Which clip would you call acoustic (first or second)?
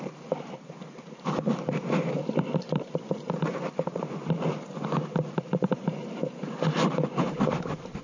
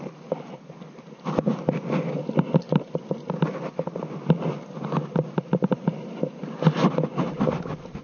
second